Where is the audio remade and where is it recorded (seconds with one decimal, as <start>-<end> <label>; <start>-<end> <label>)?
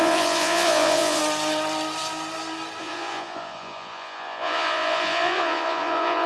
0.0-1.2 remade; 1.2-2.8 recorded; 2.8-6.3 remade